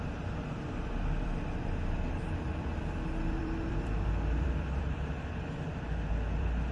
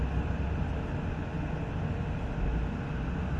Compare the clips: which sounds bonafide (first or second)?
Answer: second